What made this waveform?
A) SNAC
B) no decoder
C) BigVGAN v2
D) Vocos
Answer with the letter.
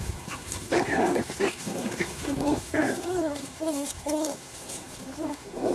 A